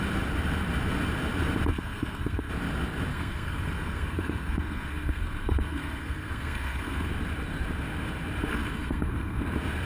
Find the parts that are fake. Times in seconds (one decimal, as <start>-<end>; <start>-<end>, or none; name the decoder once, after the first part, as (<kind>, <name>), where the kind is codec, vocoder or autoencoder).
1.7-2.5 (codec, SNAC); 3.1-7.1; 8.5-9.4